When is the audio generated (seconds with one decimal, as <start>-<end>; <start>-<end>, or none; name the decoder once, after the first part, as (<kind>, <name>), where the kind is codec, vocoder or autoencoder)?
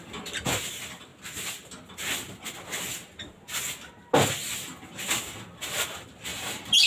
6.3-6.9 (vocoder, BigVGAN v2)